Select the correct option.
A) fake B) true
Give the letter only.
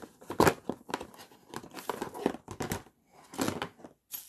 B